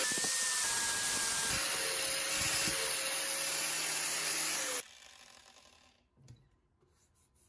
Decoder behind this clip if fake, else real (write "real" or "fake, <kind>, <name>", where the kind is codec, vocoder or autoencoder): real